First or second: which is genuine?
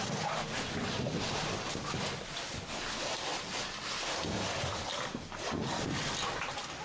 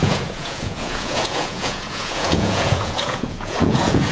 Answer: first